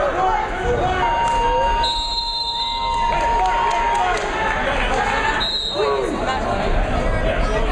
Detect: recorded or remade recorded